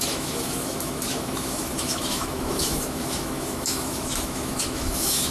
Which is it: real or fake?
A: fake